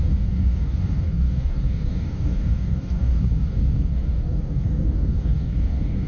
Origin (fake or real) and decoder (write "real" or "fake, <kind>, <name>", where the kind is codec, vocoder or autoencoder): fake, codec, DAC